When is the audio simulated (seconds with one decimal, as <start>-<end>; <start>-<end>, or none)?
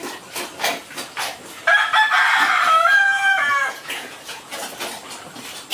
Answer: 2.9-4.5